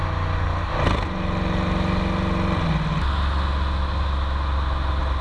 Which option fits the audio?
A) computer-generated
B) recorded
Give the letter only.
B